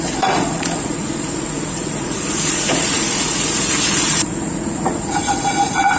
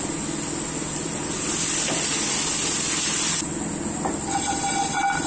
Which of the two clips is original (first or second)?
second